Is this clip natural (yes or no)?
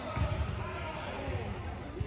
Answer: yes